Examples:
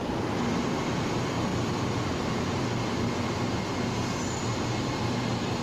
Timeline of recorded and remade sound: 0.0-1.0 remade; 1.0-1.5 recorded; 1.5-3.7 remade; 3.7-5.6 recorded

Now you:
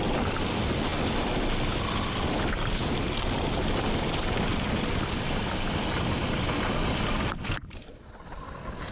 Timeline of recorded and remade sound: 0.0-8.9 recorded

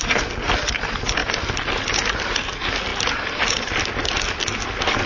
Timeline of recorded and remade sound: 0.0-5.1 recorded

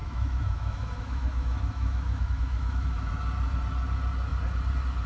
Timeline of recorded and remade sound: 0.0-3.1 remade; 3.1-5.1 recorded

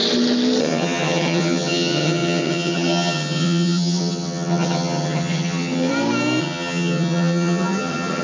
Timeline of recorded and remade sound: 0.0-0.6 recorded; 0.6-5.9 remade; 5.9-6.4 recorded; 6.4-8.2 remade

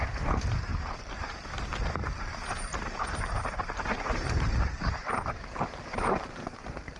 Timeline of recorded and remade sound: 0.0-0.7 recorded; 0.7-4.9 remade; 4.9-6.4 recorded; 6.4-7.0 remade

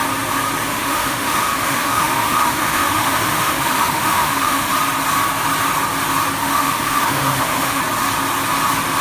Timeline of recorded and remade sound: 0.0-0.7 recorded; 0.7-4.7 remade; 4.7-6.4 recorded; 6.4-7.8 remade; 7.8-9.0 recorded

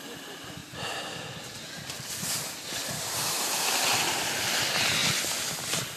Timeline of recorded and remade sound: 0.0-6.0 recorded